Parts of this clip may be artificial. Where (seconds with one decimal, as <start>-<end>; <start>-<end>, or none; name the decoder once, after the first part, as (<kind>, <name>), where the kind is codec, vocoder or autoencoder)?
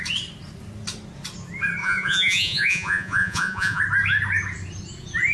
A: 1.8-3.8 (vocoder, Vocos)